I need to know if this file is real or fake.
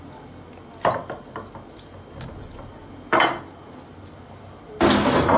real